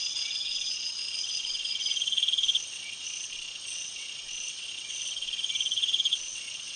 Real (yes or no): no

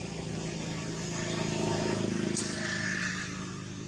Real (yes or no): yes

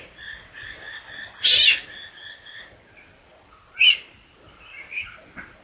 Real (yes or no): yes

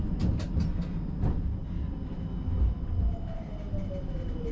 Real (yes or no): yes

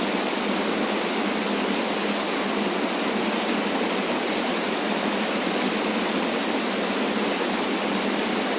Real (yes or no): yes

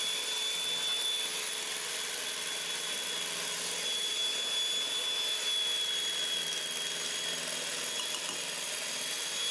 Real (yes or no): yes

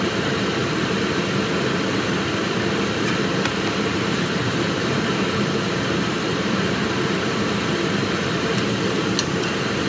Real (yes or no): no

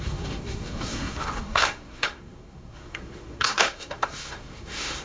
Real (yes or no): no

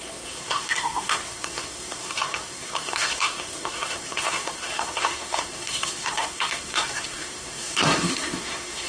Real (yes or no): no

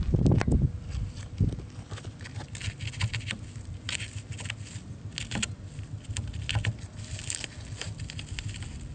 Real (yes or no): yes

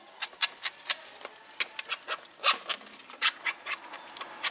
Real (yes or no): yes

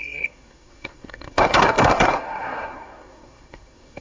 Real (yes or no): no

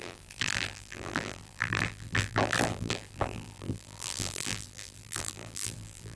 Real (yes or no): no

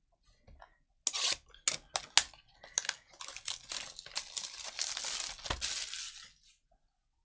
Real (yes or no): yes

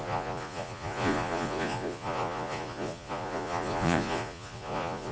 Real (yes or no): no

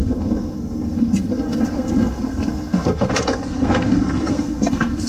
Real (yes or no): no